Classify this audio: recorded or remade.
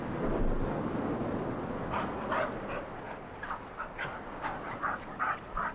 recorded